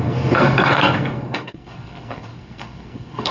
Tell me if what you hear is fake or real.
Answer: fake